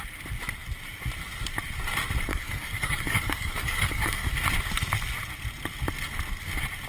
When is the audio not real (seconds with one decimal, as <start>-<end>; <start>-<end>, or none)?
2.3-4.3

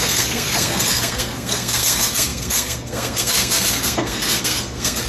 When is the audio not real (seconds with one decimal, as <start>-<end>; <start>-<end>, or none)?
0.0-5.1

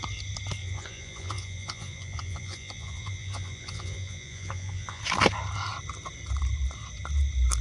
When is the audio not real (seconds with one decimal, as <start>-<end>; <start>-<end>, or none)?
0.6-5.0

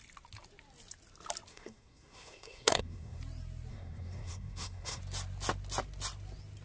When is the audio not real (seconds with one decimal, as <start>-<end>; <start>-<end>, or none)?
1.5-3.2; 3.7-5.0

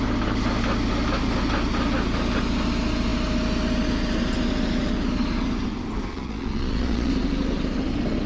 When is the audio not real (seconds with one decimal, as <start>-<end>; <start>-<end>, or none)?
6.1-7.1